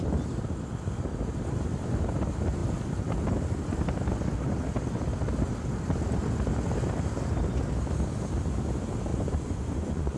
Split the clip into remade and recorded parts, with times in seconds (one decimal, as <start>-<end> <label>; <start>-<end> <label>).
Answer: 0.0-9.1 recorded; 9.1-10.2 remade